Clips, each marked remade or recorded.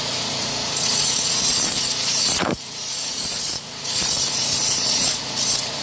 remade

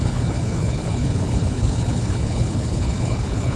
remade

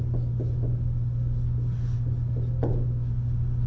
recorded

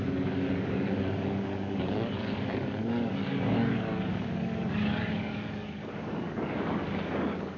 remade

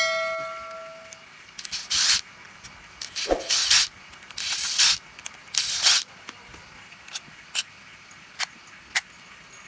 recorded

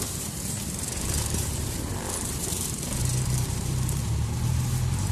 remade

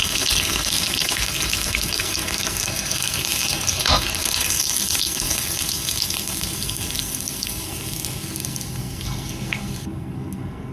remade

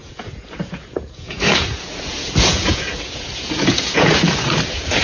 remade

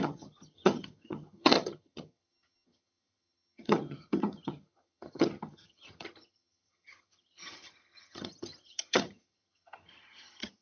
remade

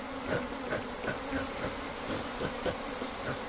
recorded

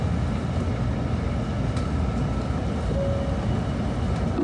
recorded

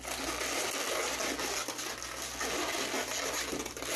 recorded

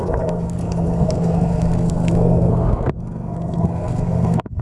remade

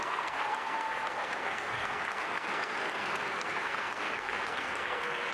remade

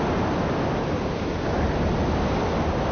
recorded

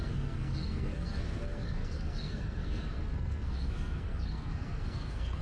remade